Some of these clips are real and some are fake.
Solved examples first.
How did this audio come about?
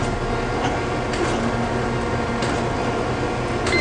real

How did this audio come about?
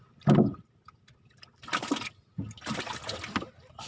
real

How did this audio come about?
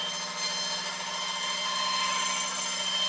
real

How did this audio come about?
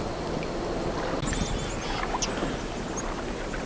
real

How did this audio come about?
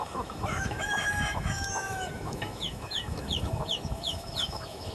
fake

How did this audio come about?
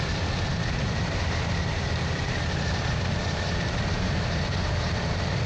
fake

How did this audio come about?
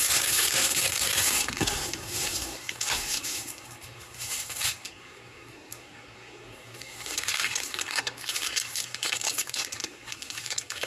fake